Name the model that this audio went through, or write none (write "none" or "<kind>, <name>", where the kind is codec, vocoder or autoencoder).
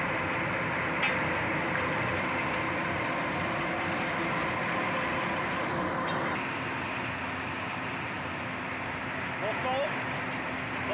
none